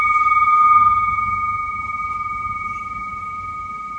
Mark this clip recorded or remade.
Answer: remade